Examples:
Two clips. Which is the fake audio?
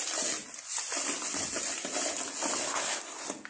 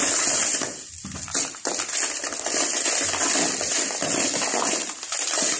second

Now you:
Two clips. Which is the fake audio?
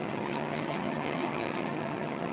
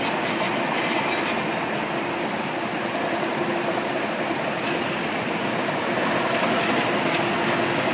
first